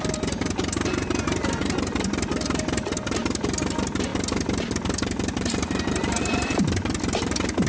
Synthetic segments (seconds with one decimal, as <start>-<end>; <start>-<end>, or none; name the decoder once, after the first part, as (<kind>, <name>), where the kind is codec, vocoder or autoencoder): none